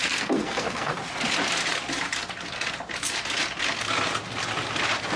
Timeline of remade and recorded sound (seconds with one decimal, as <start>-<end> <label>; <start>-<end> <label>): 0.0-1.0 remade; 1.0-5.2 recorded